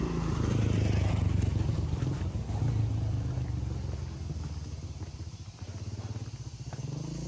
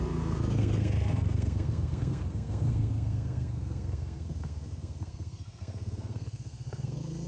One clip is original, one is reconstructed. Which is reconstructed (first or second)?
second